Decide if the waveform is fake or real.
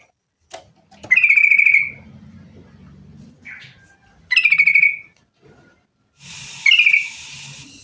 real